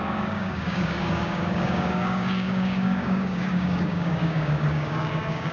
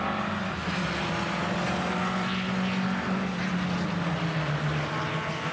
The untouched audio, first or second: second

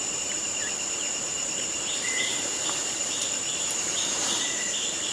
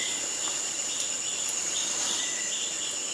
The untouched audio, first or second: second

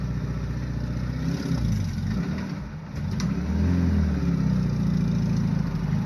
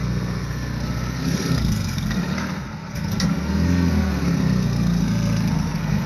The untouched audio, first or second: first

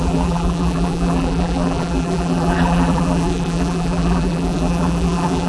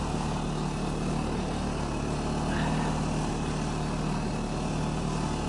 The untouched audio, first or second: second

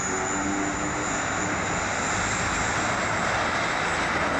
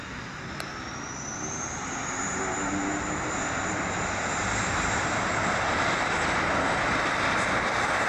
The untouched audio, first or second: first